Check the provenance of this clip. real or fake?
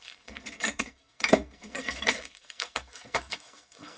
fake